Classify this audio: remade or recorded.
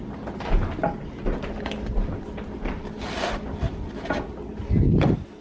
recorded